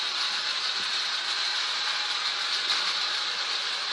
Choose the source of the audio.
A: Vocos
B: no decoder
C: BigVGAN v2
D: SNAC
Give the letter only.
B